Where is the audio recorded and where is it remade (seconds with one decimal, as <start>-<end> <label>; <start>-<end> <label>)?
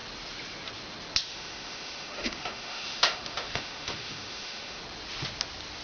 0.0-1.3 recorded; 1.3-4.8 remade; 4.8-5.8 recorded